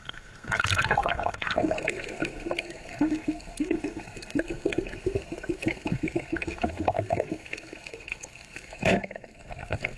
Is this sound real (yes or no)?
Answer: no